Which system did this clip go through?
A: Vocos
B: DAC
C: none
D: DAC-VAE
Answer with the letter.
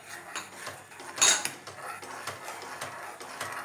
C